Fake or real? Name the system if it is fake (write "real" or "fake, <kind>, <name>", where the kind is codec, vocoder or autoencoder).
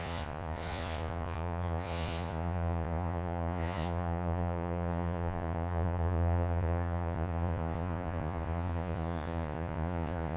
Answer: fake, vocoder, Vocos